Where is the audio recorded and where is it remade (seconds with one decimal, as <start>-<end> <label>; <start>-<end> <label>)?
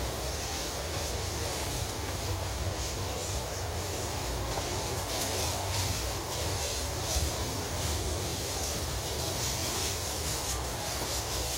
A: 0.0-11.6 remade